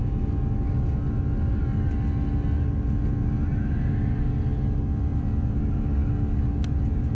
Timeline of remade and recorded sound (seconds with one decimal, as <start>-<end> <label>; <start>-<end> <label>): 0.0-7.1 recorded